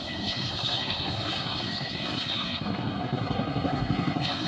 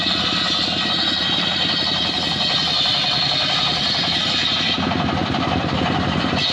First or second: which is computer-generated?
first